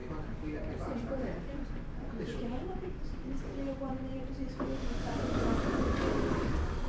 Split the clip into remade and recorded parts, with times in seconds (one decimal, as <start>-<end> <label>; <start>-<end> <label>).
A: 0.0-6.9 recorded

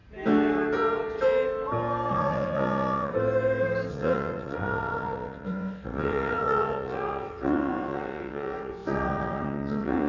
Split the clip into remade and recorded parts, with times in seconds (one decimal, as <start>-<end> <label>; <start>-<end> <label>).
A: 0.0-2.1 recorded; 2.1-3.1 remade; 3.1-3.9 recorded; 3.9-10.1 remade

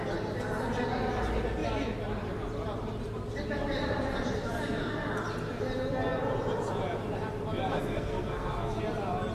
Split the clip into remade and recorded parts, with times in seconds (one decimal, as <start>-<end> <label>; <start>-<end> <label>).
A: 0.0-7.7 recorded; 7.7-8.8 remade; 8.8-9.3 recorded

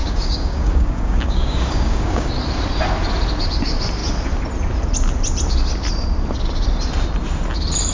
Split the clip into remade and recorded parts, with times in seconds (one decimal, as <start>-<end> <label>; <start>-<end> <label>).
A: 0.0-2.3 remade; 2.3-7.9 recorded

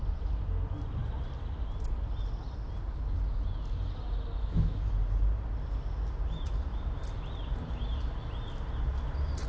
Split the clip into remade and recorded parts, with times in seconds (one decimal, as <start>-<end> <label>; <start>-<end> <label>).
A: 0.0-4.4 recorded; 4.4-4.9 remade; 4.9-9.5 recorded

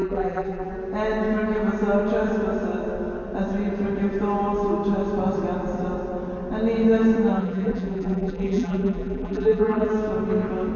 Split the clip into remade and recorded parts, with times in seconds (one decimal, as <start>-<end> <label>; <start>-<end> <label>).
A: 0.0-0.7 remade; 0.7-7.4 recorded; 7.4-9.9 remade; 9.9-10.8 recorded

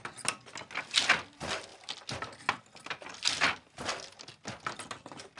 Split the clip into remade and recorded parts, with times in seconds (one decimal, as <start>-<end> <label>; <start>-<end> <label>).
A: 0.0-5.4 recorded

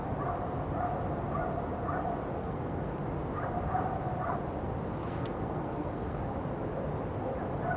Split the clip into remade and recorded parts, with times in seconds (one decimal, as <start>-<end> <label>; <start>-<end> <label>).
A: 0.0-2.4 recorded; 2.4-3.0 remade; 3.0-5.0 recorded; 5.0-6.3 remade; 6.3-7.8 recorded